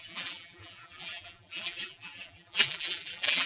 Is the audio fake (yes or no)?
yes